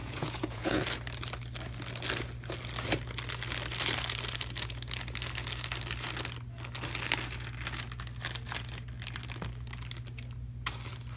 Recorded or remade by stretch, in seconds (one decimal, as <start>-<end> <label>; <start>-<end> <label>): 0.0-0.8 remade; 0.8-11.2 recorded